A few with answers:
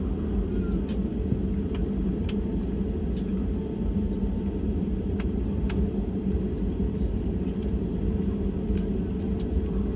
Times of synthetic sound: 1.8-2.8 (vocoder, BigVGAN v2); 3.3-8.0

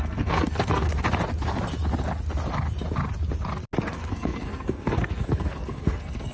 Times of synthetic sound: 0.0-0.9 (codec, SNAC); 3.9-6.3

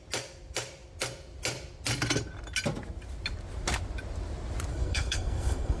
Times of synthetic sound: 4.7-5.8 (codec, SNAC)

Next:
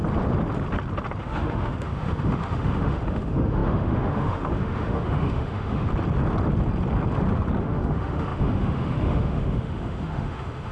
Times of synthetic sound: 1.2-5.9 (autoencoder, DAC-VAE); 7.6-10.7

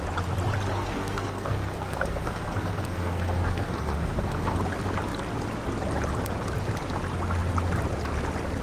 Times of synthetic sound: 0.7-4.6 (codec, SNAC)

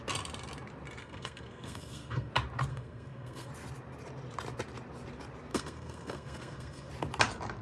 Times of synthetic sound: 1.0-2.3 (codec, SNAC); 2.7-3.5; 5.5-6.9